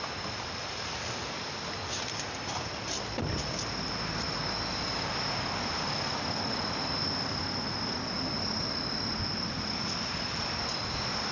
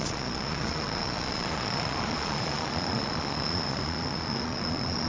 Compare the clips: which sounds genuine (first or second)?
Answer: first